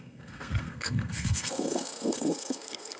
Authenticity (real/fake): fake